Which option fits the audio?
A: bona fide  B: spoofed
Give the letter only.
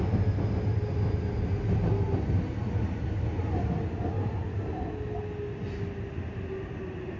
A